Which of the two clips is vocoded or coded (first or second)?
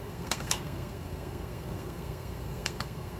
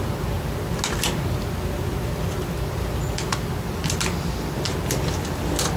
first